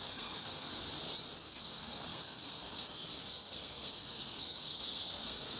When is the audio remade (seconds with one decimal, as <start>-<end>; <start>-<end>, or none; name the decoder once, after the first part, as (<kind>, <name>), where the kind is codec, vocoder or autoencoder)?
0.0-0.7 (codec, SNAC); 1.4-5.6